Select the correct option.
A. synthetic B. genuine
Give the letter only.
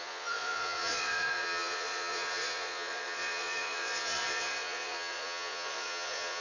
A